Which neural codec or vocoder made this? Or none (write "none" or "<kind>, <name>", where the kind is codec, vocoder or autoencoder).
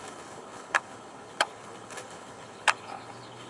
codec, HILCodec